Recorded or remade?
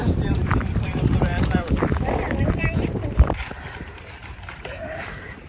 remade